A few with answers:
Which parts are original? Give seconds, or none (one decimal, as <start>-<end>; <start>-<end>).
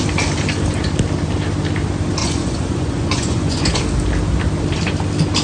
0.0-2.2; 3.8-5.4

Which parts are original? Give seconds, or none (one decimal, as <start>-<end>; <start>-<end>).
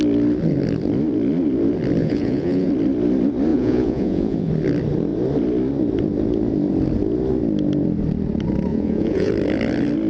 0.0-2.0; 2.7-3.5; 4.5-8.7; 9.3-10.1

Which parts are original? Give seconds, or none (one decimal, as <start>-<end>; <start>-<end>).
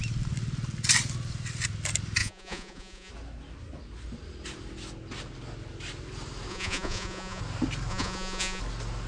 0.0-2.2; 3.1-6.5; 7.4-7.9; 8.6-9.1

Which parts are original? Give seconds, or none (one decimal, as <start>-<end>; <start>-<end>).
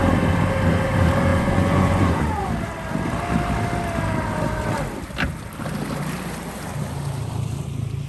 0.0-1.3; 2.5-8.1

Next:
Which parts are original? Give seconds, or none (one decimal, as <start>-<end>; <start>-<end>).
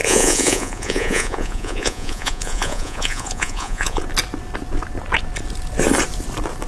4.0-6.7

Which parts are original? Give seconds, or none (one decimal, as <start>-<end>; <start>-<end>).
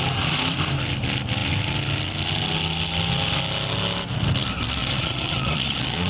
0.0-4.8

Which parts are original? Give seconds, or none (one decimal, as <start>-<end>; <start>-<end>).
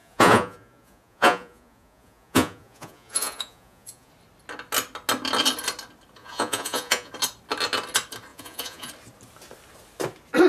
4.1-6.2; 7.1-8.3; 8.9-10.5